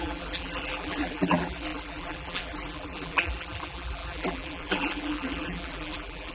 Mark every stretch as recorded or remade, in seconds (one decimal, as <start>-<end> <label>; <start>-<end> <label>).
0.0-6.3 remade